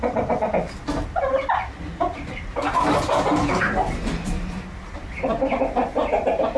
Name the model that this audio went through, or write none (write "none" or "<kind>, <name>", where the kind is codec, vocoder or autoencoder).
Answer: none